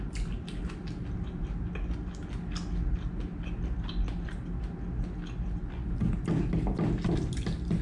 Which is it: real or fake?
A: real